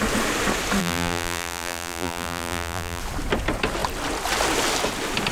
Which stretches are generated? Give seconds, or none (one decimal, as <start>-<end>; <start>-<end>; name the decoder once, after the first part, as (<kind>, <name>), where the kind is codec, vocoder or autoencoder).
0.8-3.0 (vocoder, BigVGAN v2)